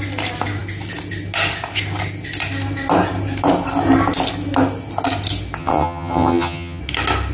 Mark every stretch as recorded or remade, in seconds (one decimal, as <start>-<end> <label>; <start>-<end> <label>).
0.0-5.6 recorded; 5.6-6.8 remade; 6.8-7.3 recorded